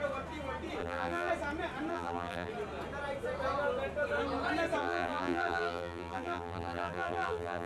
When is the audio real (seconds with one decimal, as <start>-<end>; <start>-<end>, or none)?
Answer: 0.0-0.8; 1.3-1.9; 2.5-4.8